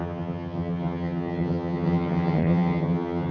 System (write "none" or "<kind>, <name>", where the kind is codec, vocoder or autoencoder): vocoder, HiFi-GAN